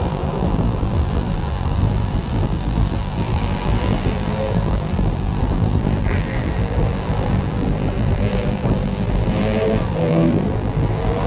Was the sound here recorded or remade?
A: remade